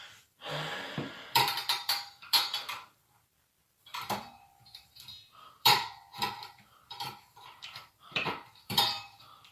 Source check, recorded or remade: remade